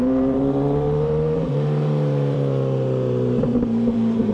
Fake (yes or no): yes